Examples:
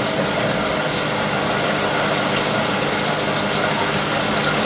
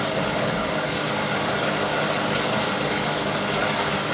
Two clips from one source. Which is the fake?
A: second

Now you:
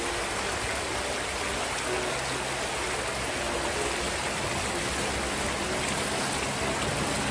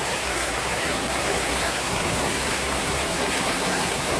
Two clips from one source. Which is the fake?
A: second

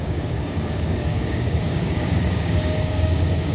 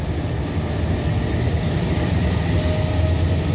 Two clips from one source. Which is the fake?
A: first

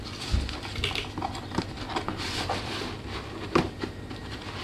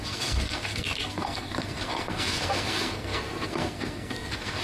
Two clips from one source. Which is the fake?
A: second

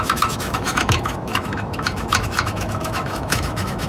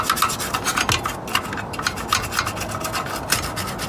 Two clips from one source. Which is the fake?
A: first